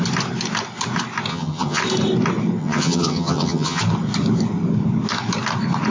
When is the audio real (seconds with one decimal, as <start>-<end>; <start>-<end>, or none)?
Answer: 0.0-1.3; 1.8-2.6; 3.8-5.9